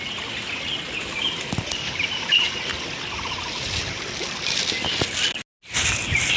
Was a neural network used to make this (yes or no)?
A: no